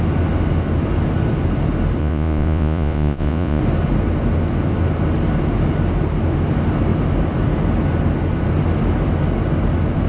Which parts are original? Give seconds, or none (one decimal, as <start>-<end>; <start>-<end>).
0.0-2.0; 3.6-10.1